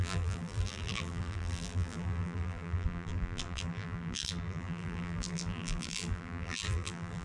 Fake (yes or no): yes